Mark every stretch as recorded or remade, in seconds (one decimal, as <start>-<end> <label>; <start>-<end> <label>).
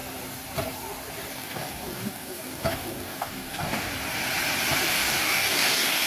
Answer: 0.0-1.3 recorded; 1.3-3.9 remade; 3.9-4.9 recorded; 4.9-6.1 remade